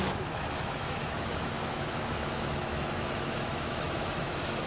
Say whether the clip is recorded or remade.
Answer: remade